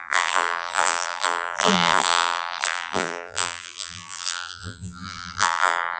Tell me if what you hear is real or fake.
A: fake